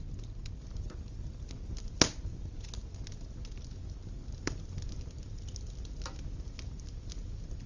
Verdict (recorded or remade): recorded